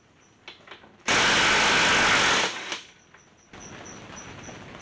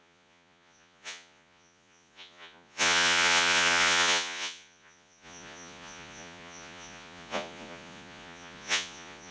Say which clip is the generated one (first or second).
second